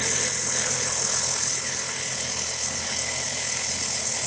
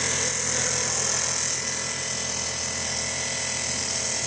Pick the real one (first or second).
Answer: second